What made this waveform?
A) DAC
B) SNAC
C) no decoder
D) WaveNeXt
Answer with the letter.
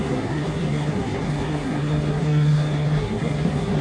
B